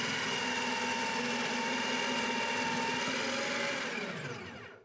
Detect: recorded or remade recorded